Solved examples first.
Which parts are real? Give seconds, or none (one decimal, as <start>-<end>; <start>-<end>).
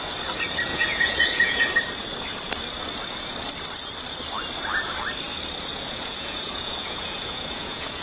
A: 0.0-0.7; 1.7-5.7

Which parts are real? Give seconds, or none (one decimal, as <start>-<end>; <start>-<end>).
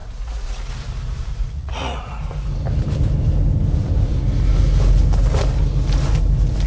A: 0.7-1.2; 2.2-6.7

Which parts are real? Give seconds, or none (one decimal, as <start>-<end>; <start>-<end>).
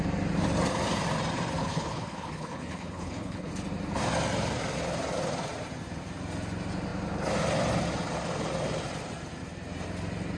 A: 0.0-1.6; 3.5-10.4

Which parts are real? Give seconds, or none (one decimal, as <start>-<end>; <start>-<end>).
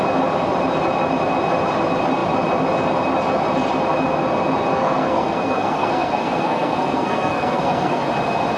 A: 0.0-4.7; 8.0-8.6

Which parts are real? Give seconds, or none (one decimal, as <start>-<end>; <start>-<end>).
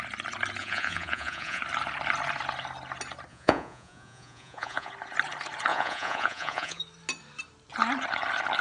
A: 0.0-0.6; 1.6-3.3; 4.9-5.7; 6.8-8.6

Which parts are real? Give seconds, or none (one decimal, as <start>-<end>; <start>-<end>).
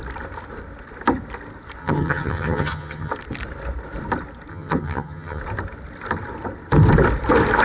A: 0.0-1.8; 3.1-4.5; 5.4-7.6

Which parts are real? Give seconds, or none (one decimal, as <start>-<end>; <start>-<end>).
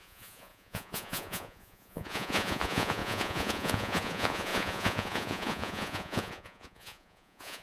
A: none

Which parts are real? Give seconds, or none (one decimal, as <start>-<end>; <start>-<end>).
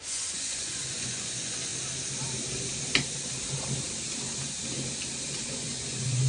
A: 1.7-5.5